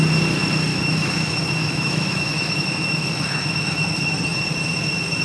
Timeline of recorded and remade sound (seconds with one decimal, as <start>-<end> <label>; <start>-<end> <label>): 0.0-0.7 recorded; 0.7-3.8 remade; 3.8-5.2 recorded